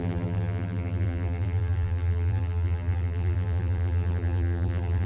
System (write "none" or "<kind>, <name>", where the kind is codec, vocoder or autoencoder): vocoder, BigVGAN v2